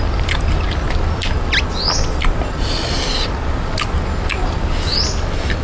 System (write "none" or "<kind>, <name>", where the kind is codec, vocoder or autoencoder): none